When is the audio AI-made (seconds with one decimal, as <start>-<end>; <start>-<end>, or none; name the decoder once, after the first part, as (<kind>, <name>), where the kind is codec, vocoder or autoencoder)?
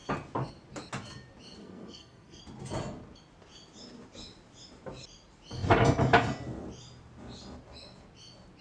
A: 1.6-2.4 (codec, SNAC)